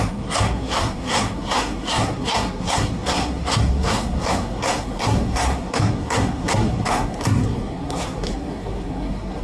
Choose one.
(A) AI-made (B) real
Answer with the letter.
A